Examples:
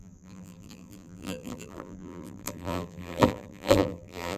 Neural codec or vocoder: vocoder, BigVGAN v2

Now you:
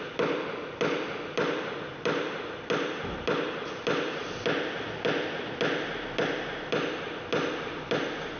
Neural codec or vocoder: none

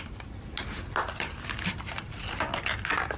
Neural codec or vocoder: none